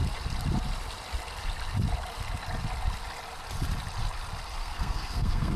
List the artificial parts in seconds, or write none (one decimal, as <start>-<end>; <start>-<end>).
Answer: 4.6-5.6